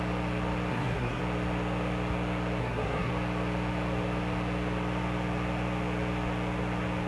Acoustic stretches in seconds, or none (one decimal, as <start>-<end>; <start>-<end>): 0.0-0.7; 1.2-2.6; 3.1-7.1